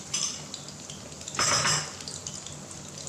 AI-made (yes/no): no